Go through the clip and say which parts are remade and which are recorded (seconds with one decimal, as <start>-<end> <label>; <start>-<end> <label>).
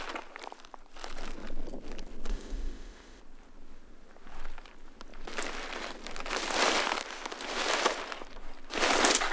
0.0-2.3 recorded; 2.3-3.2 remade; 3.2-9.3 recorded